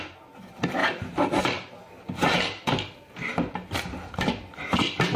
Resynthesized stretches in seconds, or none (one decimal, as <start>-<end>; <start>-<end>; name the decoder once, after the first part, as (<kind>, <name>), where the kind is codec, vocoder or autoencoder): none